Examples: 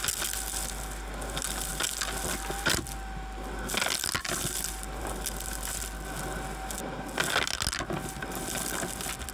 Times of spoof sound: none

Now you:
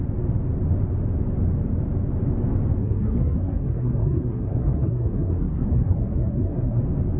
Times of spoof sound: 2.8-6.8

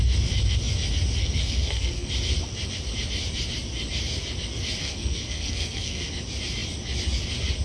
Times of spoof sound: 1.2-2.1; 4.8-6.1

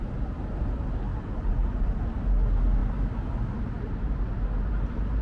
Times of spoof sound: none

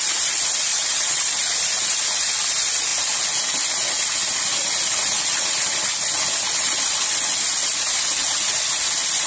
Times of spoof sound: 0.7-1.2